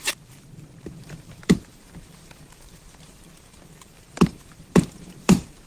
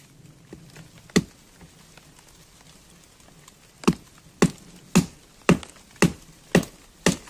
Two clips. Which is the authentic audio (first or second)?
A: second